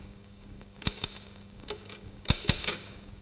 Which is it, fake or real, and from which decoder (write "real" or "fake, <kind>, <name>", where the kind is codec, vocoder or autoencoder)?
fake, codec, DAC